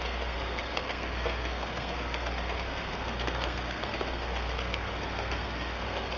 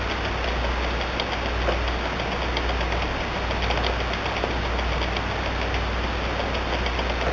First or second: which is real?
second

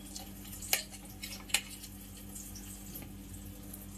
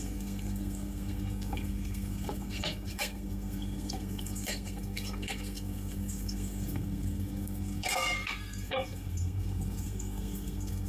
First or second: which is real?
first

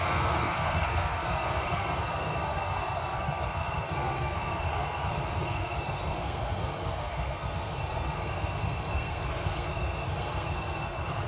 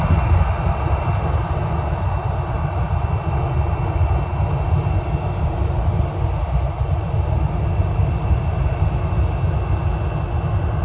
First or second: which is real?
second